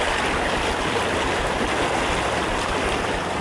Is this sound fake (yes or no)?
no